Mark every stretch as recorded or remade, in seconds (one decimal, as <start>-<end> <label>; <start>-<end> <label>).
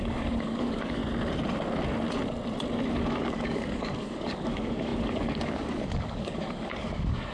0.0-1.0 remade; 1.0-2.9 recorded; 2.9-7.3 remade